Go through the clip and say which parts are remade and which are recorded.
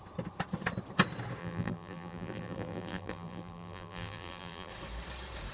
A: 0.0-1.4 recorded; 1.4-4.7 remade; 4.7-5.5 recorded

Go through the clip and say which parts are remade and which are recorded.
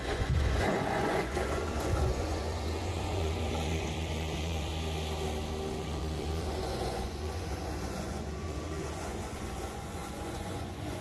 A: 0.0-4.7 remade; 4.7-5.7 recorded; 5.7-11.0 remade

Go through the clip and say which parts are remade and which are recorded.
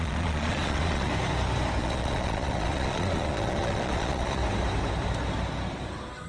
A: 0.0-1.1 remade; 1.1-1.8 recorded; 1.8-4.4 remade; 4.4-6.3 recorded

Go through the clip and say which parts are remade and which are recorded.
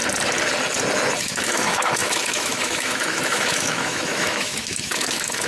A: 0.0-1.2 recorded; 1.2-5.5 remade